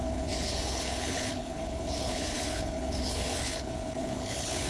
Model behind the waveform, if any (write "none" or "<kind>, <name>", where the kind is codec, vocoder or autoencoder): codec, HILCodec